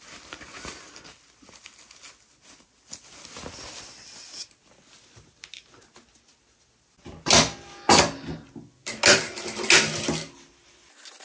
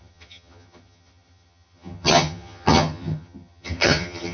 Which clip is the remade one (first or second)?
second